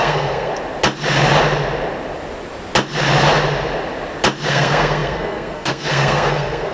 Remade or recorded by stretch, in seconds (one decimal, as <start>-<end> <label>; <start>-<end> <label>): 0.0-0.5 remade; 0.5-4.5 recorded; 4.5-6.7 remade